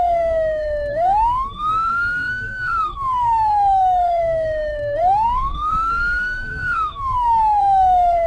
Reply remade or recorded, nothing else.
remade